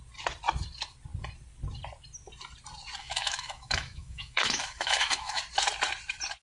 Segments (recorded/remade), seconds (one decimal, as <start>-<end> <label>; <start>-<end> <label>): 0.0-3.0 recorded; 3.0-5.4 remade; 5.4-6.4 recorded